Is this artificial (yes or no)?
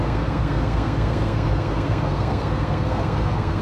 yes